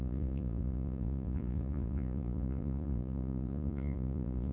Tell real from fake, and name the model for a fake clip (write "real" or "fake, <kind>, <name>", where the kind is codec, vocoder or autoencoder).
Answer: fake, vocoder, Vocos